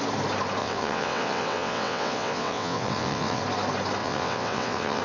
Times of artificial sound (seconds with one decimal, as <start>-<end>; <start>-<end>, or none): 0.6-3.4; 4.0-5.0